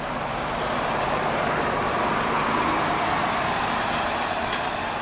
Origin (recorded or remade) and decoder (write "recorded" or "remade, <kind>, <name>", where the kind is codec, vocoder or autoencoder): recorded